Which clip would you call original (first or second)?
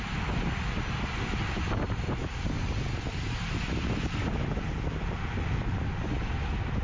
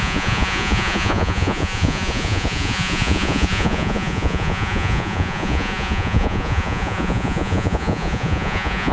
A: first